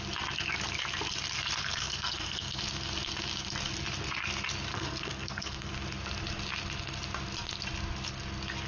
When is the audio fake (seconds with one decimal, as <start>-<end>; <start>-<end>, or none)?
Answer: 1.6-2.6; 4.7-5.7